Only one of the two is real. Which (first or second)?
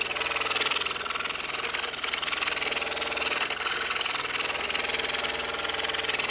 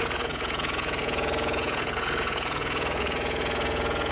first